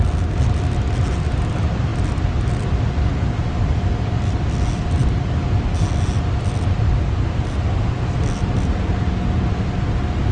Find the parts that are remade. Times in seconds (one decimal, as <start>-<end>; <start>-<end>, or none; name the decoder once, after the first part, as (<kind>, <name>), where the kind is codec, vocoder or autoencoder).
none